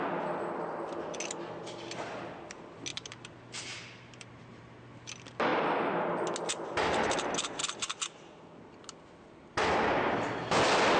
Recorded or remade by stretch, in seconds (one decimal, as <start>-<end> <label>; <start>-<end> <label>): 0.0-2.9 recorded; 2.9-4.7 remade; 4.7-11.0 recorded